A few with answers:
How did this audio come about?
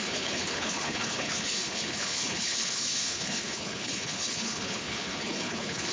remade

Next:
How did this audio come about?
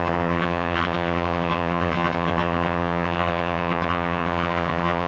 remade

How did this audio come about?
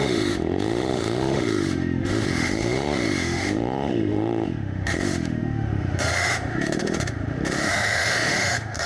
remade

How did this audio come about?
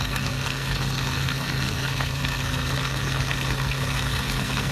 remade